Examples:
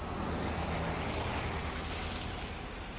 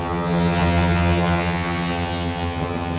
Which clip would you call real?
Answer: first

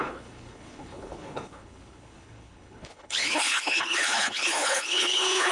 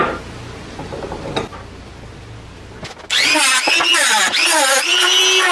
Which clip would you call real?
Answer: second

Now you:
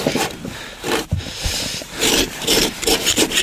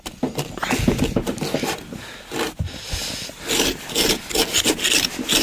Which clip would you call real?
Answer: second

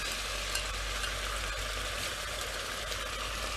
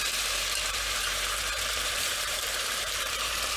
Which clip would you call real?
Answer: first